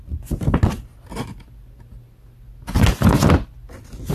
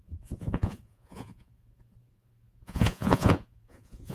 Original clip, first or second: first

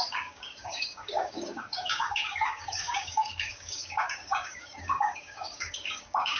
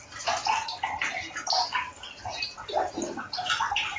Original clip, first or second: second